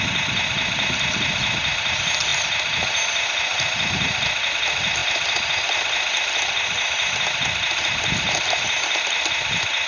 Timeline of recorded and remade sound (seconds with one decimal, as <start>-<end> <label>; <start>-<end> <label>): 0.0-9.9 recorded